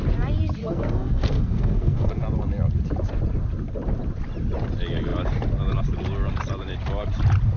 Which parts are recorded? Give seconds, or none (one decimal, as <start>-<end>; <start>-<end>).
0.0-0.6; 2.1-7.6